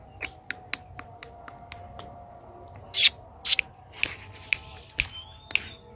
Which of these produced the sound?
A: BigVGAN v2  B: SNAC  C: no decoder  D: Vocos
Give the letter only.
C